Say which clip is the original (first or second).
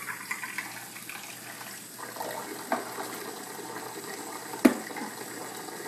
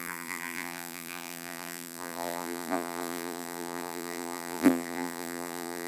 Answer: first